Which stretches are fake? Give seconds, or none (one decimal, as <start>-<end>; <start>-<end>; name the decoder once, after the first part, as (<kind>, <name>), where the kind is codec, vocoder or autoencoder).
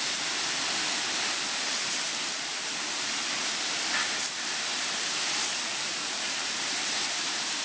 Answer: 0.0-4.7 (vocoder, BigVGAN v2); 5.5-7.6